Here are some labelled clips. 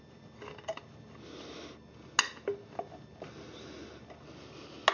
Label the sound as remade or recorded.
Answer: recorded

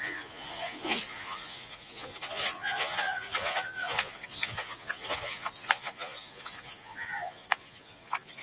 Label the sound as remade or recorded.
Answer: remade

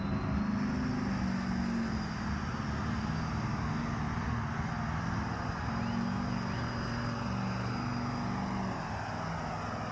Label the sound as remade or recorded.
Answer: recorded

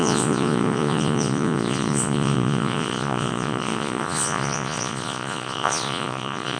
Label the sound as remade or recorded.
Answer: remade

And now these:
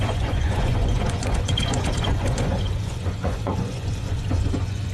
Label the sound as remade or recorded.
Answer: remade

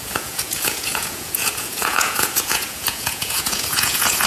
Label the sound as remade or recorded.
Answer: remade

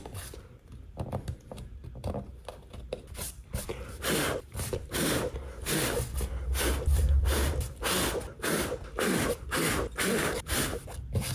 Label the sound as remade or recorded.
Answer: recorded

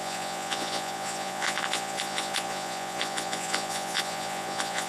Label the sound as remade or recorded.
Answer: remade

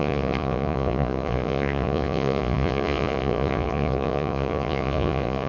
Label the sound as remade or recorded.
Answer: remade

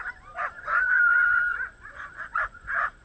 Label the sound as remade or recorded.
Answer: remade